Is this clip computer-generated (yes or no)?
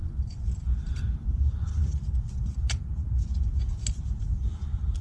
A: no